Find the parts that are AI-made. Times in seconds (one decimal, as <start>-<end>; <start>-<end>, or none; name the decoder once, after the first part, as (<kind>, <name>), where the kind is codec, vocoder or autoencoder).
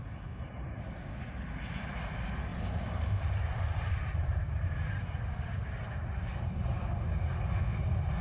2.5-6.6 (vocoder, BigVGAN v2)